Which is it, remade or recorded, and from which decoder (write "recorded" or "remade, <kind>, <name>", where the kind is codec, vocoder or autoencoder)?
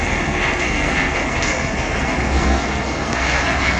remade, codec, SNAC